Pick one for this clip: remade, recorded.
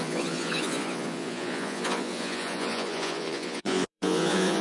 remade